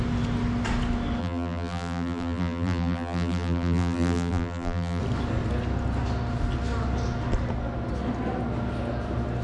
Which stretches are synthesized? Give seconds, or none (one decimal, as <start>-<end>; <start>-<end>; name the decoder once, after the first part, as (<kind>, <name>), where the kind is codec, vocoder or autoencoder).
1.2-5.0 (vocoder, BigVGAN v2)